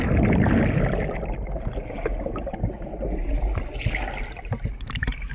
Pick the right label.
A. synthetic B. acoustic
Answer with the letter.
B